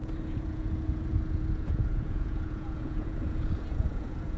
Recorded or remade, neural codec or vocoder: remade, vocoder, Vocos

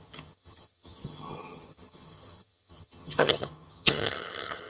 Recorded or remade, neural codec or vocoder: remade, vocoder, HiFi-GAN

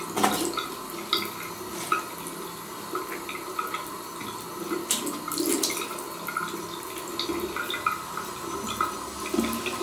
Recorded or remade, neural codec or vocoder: recorded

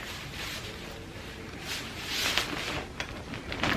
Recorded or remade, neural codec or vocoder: recorded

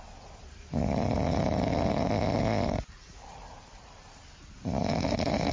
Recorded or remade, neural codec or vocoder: recorded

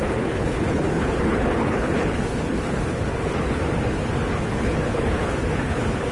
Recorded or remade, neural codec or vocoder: remade, codec, HILCodec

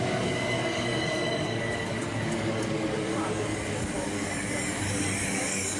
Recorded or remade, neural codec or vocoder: remade, codec, DAC